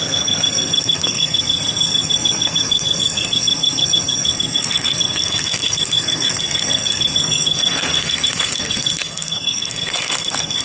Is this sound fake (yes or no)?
yes